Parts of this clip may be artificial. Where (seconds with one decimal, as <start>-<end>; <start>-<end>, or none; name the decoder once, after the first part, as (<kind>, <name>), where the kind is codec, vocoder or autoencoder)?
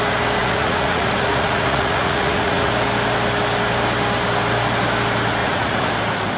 0.4-2.7 (vocoder, Vocos); 5.4-5.9